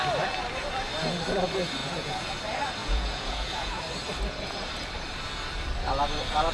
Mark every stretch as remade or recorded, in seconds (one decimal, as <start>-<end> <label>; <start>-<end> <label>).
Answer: 0.0-1.8 recorded; 1.8-2.3 remade; 2.3-2.8 recorded; 2.8-3.8 remade; 3.8-6.5 recorded